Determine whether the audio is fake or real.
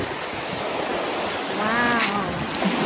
real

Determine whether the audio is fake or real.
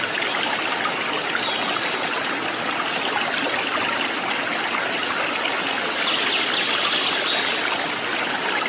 real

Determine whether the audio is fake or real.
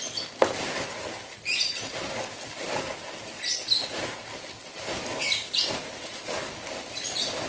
real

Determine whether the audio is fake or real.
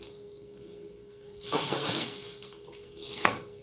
fake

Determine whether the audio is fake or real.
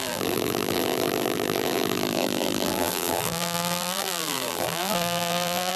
fake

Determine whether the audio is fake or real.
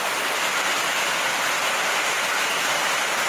real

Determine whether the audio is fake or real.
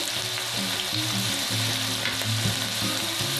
real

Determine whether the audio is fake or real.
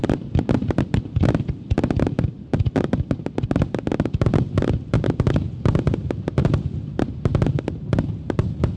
real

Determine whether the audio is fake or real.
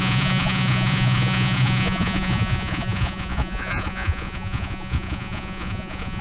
fake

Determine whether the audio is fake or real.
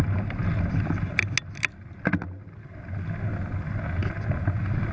real